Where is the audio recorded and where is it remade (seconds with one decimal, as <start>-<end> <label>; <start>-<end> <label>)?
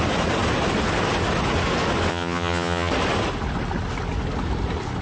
0.0-2.1 recorded; 2.1-2.9 remade; 2.9-5.0 recorded